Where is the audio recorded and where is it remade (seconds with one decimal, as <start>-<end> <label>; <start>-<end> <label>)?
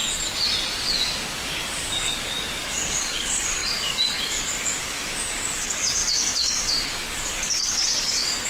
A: 0.0-0.9 recorded; 0.9-8.5 remade